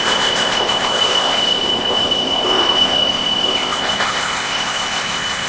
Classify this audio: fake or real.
fake